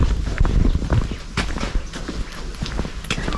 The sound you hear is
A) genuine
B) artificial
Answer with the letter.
A